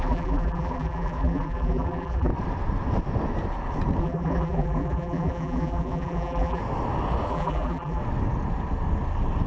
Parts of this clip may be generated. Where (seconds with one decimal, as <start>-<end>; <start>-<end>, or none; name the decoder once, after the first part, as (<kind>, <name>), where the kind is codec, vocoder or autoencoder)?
0.0-2.3 (vocoder, BigVGAN v2); 4.0-6.6; 7.3-8.0